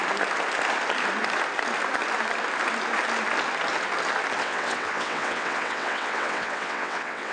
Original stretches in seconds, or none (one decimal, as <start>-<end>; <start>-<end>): 0.0-4.4